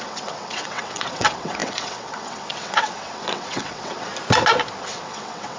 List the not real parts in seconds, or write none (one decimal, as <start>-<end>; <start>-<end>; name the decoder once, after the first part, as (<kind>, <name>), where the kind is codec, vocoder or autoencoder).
0.0-4.1 (vocoder, WaveNeXt); 4.8-5.6